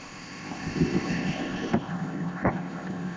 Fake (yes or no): yes